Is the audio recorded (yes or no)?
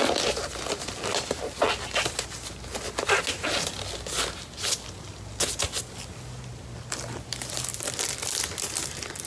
yes